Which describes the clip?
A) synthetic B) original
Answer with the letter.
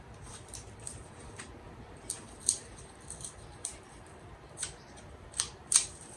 A